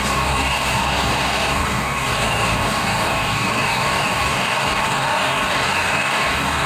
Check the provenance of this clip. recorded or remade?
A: remade